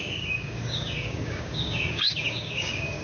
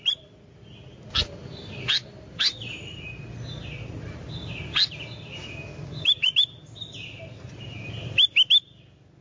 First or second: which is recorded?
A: second